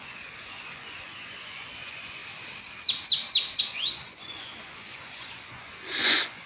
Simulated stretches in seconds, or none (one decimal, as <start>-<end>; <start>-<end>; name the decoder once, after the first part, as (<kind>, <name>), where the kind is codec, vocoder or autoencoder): 0.0-2.2 (vocoder, Vocos); 3.6-6.5